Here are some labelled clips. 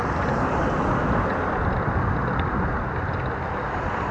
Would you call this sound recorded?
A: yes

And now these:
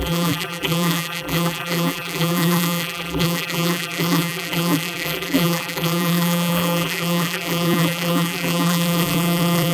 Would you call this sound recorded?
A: no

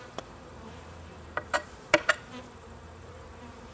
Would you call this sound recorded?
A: no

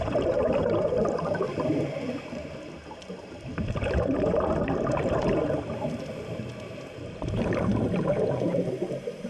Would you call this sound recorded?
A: no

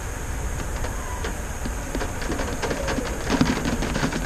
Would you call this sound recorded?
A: no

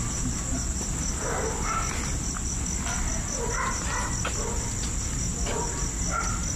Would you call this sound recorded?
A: yes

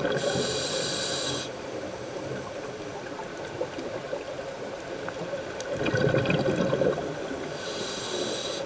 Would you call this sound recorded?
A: yes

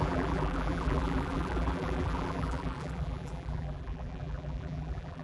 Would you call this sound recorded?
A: no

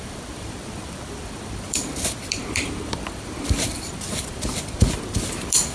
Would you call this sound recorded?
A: no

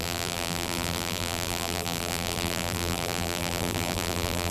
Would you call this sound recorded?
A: no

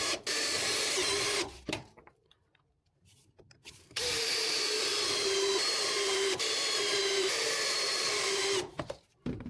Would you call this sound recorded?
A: no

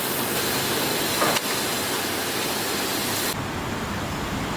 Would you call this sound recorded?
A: yes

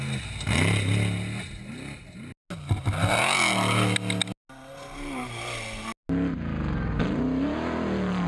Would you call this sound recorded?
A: yes